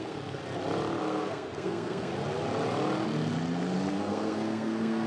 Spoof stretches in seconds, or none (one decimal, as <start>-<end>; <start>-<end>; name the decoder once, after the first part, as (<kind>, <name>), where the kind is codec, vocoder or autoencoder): 0.0-0.4 (codec, SNAC); 1.0-2.1; 3.9-5.1